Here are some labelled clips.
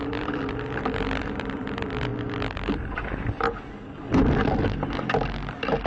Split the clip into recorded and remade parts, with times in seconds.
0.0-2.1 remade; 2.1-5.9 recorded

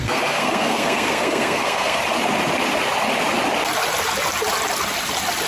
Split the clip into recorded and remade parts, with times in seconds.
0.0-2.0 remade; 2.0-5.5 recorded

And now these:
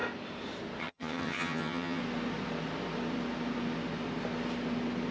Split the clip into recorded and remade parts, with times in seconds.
0.0-0.8 recorded; 0.8-2.0 remade; 2.0-5.1 recorded

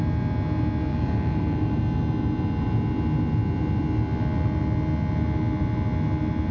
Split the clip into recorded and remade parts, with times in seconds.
0.0-0.9 recorded; 0.9-1.8 remade; 1.8-6.5 recorded

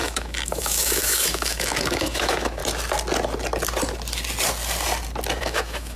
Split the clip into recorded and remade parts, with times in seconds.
0.0-2.6 remade; 2.6-5.4 recorded; 5.4-6.0 remade

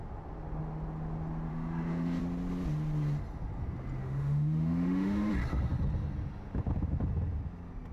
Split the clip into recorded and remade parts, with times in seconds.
0.0-1.5 recorded; 1.5-2.2 remade; 2.2-4.0 recorded; 4.0-5.3 remade; 5.3-7.9 recorded

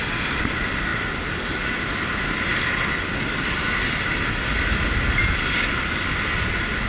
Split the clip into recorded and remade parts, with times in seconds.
0.0-6.9 recorded

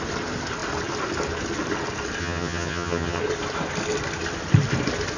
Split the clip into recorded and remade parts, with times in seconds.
0.0-2.2 recorded; 2.2-3.2 remade; 3.2-5.2 recorded